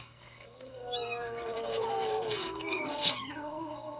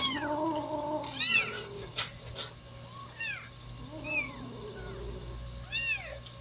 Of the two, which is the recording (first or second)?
second